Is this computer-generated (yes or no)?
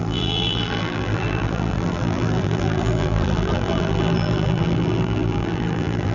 yes